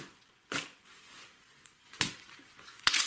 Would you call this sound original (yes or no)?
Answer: no